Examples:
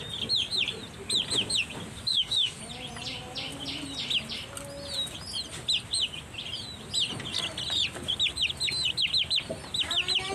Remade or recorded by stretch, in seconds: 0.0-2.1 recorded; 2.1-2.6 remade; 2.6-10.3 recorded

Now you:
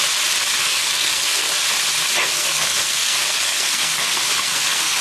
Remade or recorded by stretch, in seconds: 0.0-0.6 recorded; 0.6-1.5 remade; 1.5-2.2 recorded; 2.2-5.0 remade

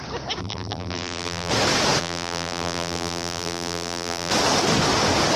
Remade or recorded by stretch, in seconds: 0.0-0.4 recorded; 0.4-1.5 remade; 1.5-2.0 recorded; 2.0-4.3 remade; 4.3-5.4 recorded

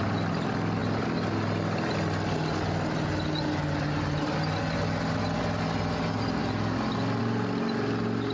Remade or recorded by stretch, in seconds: 0.0-8.3 recorded

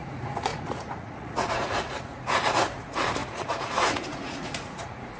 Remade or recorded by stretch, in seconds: 0.0-5.2 remade

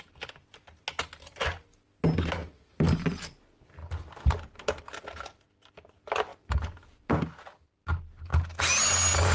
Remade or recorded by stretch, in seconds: 0.0-2.4 recorded; 2.4-3.4 remade; 3.4-6.3 recorded; 6.3-7.0 remade; 7.0-9.3 recorded

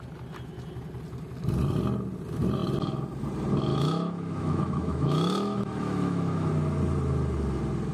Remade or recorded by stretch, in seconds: 0.0-3.7 recorded; 3.7-6.5 remade; 6.5-7.9 recorded

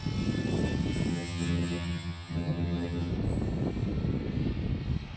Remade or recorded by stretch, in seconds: 0.0-1.1 recorded; 1.1-3.1 remade; 3.1-5.2 recorded